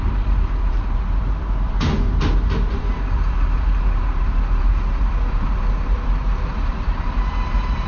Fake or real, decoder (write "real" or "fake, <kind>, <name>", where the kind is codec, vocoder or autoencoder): fake, vocoder, BigVGAN v2